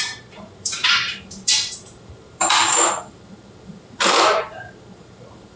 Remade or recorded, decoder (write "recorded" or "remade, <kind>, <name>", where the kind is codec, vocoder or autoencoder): remade, vocoder, BigVGAN v2